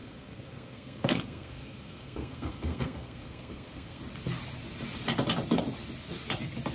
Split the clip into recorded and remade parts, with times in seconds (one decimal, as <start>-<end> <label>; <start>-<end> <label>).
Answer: 0.0-4.0 remade; 4.0-6.7 recorded